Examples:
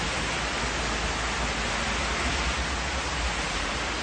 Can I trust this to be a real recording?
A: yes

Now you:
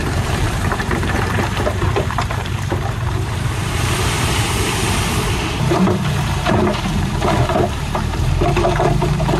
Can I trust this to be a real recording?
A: no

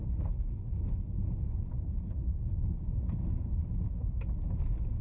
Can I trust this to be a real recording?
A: yes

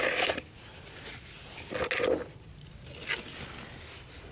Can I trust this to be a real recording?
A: yes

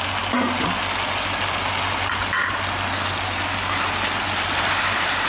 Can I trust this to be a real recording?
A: yes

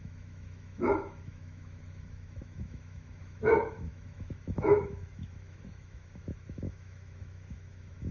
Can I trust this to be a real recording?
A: no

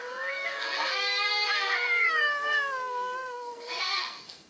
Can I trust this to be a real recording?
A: no